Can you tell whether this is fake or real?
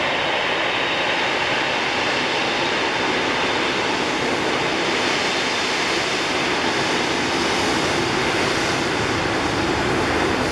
real